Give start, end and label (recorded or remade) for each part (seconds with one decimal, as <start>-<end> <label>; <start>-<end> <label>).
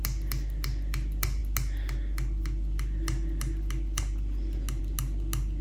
0.0-5.6 recorded